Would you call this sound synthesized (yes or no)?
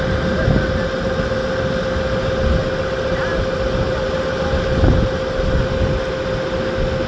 no